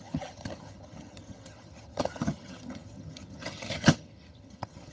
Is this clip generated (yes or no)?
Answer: yes